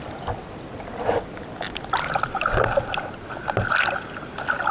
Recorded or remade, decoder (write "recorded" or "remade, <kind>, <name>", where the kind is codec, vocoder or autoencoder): recorded